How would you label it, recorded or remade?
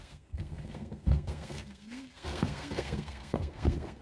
remade